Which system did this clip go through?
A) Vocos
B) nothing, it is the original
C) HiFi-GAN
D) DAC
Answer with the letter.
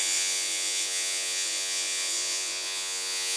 A